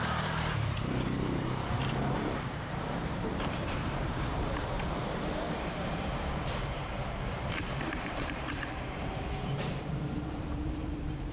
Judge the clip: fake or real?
fake